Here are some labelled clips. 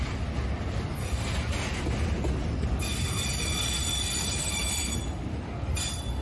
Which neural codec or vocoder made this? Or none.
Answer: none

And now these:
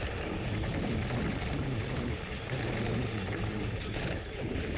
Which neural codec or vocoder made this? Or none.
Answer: none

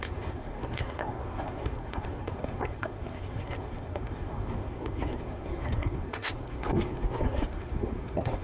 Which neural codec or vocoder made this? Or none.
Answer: codec, SNAC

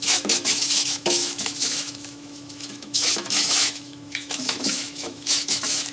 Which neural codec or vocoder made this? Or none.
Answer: autoencoder, DAC-VAE